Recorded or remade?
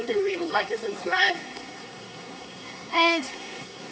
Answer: remade